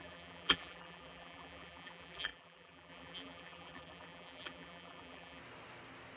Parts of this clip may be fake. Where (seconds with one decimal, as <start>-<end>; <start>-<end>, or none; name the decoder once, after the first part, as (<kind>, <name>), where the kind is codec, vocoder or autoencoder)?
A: 0.0-5.4 (vocoder, BigVGAN v2)